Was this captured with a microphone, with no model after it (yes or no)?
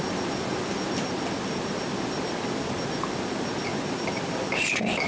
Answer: yes